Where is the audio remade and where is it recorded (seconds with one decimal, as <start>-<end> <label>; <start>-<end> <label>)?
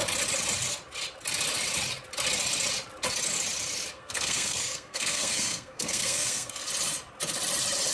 0.0-3.9 recorded; 3.9-6.6 remade; 6.6-7.9 recorded